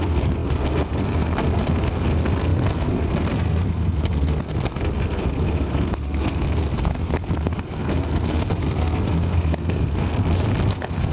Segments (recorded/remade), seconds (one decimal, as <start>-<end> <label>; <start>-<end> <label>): 0.0-10.1 remade; 10.1-10.7 recorded; 10.7-11.1 remade